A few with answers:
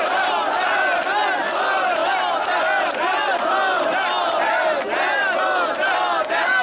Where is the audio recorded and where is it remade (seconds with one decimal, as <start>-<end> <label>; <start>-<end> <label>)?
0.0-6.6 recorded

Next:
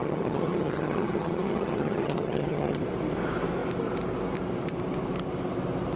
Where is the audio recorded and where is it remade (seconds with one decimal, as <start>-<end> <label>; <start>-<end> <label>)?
0.0-2.8 remade; 2.8-6.0 recorded

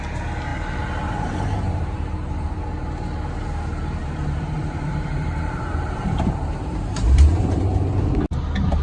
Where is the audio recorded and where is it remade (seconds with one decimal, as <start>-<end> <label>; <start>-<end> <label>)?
0.0-0.5 recorded; 0.5-2.5 remade; 2.5-4.0 recorded; 4.0-7.6 remade; 7.6-8.8 recorded

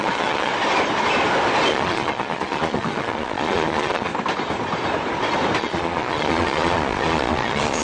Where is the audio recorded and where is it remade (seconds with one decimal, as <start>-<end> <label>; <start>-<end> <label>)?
0.0-0.5 remade; 0.5-1.7 recorded; 1.7-4.1 remade; 4.1-5.6 recorded; 5.6-7.8 remade